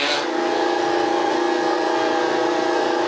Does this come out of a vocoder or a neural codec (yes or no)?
yes